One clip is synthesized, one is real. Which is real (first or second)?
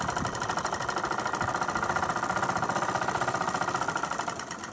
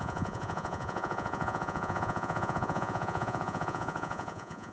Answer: first